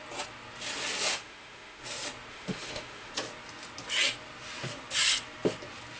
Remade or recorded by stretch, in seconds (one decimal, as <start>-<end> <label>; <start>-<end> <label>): 0.0-1.1 recorded; 1.1-1.8 remade; 1.8-2.3 recorded; 2.3-3.1 remade; 3.1-6.0 recorded